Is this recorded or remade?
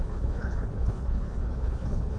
remade